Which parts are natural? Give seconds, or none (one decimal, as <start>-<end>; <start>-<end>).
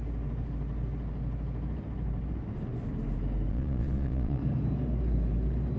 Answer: 0.0-3.5; 4.4-5.8